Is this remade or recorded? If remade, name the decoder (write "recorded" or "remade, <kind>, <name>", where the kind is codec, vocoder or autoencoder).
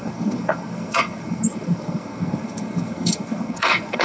remade, codec, SNAC